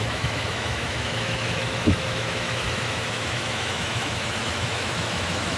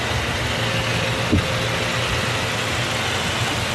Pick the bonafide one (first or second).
second